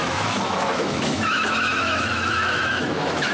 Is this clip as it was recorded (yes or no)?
no